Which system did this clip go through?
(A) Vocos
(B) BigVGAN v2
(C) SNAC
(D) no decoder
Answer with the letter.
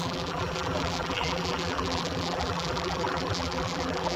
B